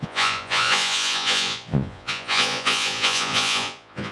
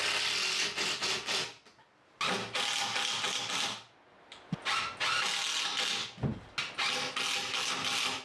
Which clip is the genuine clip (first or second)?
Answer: second